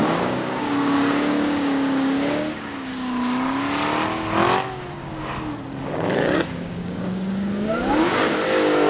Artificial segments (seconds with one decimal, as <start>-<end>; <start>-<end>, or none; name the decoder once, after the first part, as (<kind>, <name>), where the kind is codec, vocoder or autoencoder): 0.0-2.9 (codec, DAC); 5.8-8.9